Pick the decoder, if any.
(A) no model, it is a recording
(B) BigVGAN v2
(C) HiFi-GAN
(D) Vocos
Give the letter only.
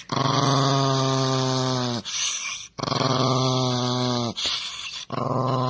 A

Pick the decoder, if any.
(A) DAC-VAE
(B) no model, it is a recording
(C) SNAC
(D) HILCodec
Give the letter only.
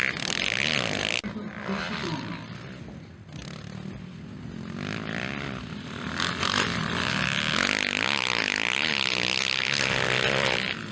B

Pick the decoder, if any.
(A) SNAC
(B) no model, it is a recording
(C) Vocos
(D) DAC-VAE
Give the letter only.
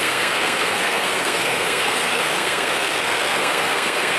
A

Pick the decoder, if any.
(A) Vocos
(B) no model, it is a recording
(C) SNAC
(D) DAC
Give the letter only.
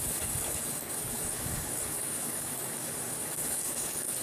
D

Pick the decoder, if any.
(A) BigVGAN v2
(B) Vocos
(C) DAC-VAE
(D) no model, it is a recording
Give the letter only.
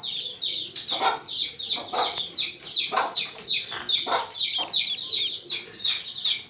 D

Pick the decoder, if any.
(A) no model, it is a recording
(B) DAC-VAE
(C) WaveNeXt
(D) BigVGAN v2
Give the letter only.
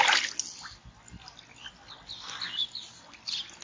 A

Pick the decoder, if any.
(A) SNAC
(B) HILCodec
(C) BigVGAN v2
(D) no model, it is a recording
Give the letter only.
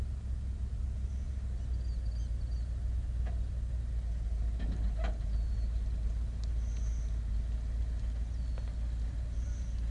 D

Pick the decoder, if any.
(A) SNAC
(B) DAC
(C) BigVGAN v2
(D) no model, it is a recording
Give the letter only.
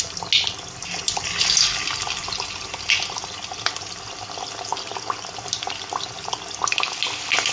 D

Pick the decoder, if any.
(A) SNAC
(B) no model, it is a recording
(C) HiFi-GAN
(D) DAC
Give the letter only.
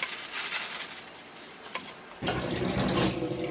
B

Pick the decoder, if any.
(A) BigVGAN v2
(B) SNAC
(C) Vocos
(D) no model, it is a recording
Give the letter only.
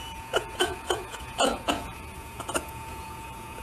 C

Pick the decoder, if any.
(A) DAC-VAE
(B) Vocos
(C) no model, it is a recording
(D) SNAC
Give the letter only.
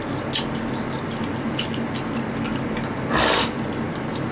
C